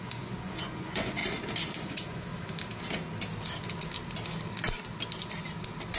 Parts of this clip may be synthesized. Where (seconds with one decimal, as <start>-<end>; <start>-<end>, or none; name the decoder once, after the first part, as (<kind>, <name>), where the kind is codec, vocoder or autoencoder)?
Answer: 0.0-1.2 (vocoder, Vocos); 1.8-2.3